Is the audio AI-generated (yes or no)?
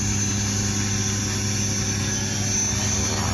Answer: no